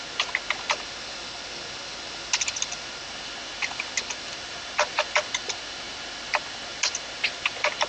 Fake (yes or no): no